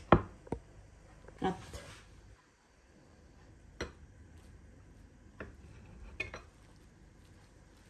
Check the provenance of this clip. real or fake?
real